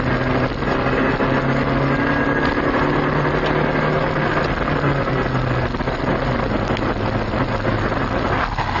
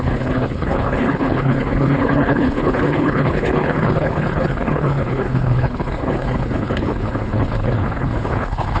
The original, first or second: first